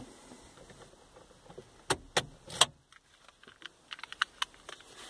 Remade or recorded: recorded